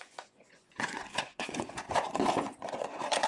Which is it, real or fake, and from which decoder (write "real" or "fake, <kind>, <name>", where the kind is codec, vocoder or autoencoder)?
fake, vocoder, Vocos